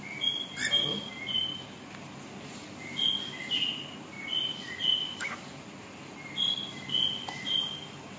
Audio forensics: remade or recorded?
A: recorded